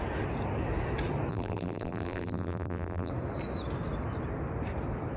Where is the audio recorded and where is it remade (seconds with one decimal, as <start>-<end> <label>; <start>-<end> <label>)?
0.0-1.3 recorded; 1.3-3.1 remade; 3.1-5.2 recorded